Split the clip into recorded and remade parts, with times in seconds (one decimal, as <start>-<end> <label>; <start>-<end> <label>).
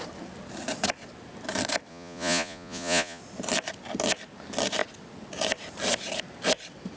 0.0-1.9 recorded; 1.9-3.2 remade; 3.2-7.0 recorded